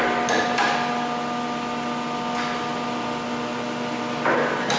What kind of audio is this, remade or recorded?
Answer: recorded